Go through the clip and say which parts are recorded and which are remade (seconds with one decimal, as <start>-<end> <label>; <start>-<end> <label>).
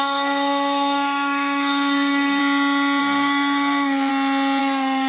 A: 0.0-2.4 remade; 2.4-3.0 recorded; 3.0-4.1 remade; 4.1-4.6 recorded; 4.6-5.1 remade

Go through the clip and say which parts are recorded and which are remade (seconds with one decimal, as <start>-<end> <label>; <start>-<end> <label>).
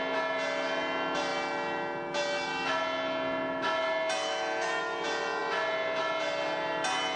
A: 0.0-7.2 recorded